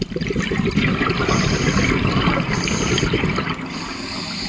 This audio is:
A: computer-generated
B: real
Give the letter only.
B